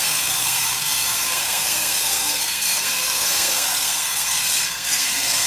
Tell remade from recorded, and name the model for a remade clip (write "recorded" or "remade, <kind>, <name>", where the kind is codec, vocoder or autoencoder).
remade, codec, SNAC